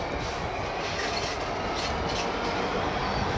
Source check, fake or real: real